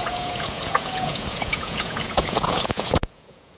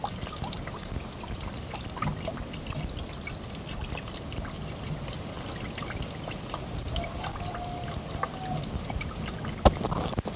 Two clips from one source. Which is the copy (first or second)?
first